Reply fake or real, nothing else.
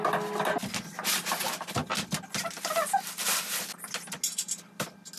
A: real